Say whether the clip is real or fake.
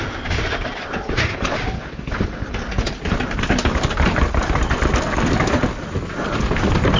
real